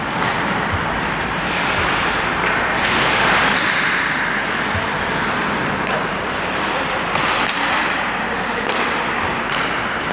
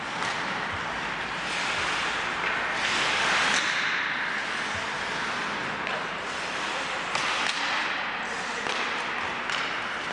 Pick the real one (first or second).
second